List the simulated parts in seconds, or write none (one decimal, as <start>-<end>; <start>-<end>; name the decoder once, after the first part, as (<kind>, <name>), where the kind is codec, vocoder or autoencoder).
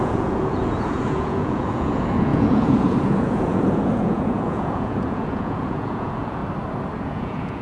0.0-6.4 (vocoder, Vocos); 7.1-7.6